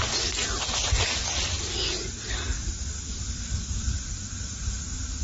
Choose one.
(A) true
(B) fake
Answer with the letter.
A